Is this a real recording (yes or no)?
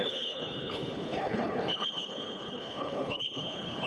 no